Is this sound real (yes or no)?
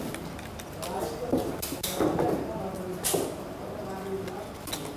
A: yes